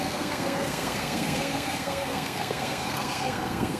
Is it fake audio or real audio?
fake